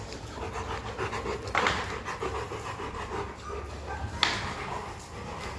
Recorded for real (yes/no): yes